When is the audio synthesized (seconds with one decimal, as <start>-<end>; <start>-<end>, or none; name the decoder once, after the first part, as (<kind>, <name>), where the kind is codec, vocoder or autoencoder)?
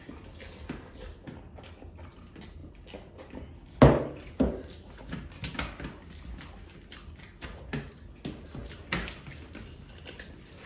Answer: none